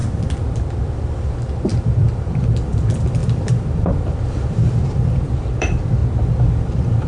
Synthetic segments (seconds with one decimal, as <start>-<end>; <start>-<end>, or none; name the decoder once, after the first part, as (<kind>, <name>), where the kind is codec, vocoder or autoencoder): 0.8-6.0 (vocoder, BigVGAN v2); 6.6-7.1